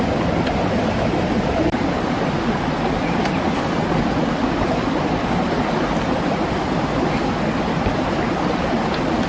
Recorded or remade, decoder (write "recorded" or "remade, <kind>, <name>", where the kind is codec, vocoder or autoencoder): recorded